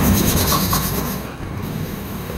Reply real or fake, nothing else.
fake